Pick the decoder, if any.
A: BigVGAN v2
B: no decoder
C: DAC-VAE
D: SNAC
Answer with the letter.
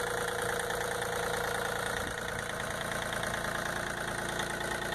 B